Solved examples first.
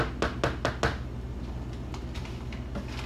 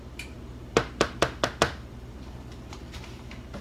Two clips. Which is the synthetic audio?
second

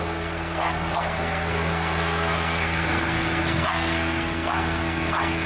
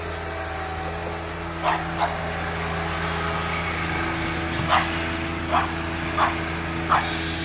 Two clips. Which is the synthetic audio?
first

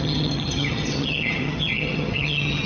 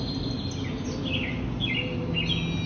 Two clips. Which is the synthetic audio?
first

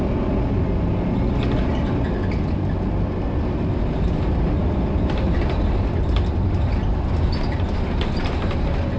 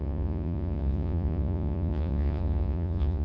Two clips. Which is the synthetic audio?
second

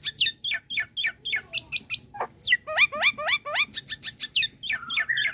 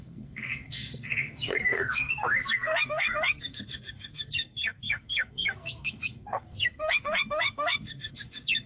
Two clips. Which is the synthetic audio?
second